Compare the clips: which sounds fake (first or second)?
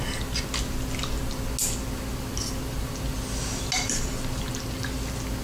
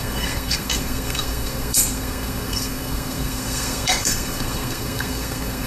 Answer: second